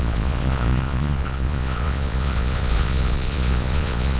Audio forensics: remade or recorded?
remade